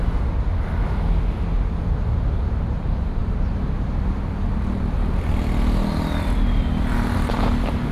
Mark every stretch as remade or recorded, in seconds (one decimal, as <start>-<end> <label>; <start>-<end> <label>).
0.0-7.9 recorded